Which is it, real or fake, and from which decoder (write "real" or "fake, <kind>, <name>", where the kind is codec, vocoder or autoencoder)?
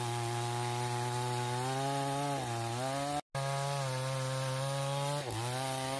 real